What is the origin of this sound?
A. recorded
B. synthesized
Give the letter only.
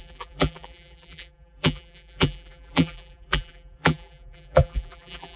B